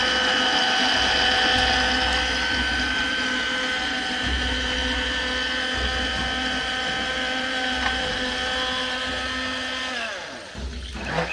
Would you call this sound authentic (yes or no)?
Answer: yes